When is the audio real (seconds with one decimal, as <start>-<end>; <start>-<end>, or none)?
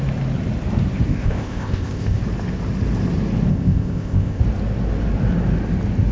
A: 0.0-1.1; 2.2-3.5; 4.4-6.1